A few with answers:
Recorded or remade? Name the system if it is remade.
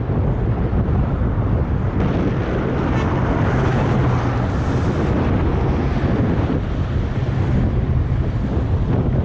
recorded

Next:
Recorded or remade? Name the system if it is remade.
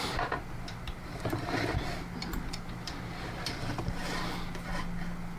recorded